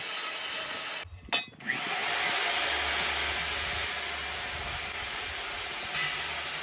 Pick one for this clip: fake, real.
real